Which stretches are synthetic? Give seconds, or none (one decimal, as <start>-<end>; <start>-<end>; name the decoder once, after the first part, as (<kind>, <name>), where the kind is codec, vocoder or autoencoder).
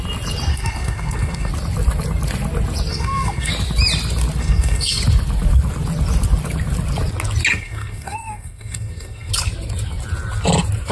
0.5-1.5 (codec, SNAC); 2.9-3.5; 4.4-5.0; 7.5-9.3